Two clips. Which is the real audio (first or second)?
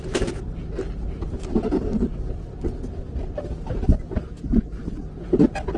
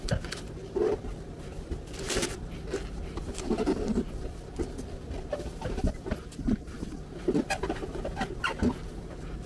first